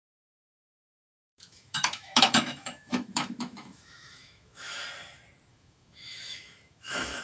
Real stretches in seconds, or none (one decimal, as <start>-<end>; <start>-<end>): 0.0-0.6; 4.8-5.5